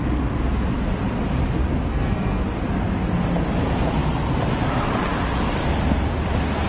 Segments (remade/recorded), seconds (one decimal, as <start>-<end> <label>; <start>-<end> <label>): 0.0-1.9 recorded; 1.9-2.4 remade; 2.4-6.7 recorded

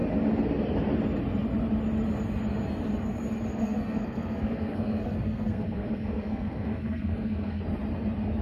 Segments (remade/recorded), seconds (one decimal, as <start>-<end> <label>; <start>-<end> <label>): 0.0-3.5 recorded; 3.5-7.6 remade; 7.6-8.4 recorded

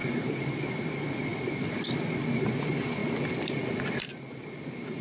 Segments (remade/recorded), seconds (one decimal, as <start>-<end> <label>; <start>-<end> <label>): 0.0-1.3 recorded; 1.3-1.9 remade; 1.9-3.0 recorded; 3.0-4.6 remade; 4.6-5.0 recorded